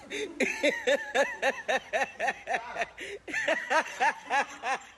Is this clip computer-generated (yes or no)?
no